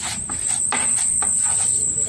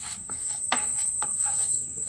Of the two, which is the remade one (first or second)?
second